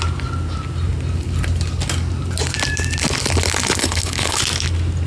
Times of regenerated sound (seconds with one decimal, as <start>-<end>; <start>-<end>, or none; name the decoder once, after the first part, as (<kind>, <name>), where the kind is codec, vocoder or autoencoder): 3.8-4.4 (codec, HILCodec)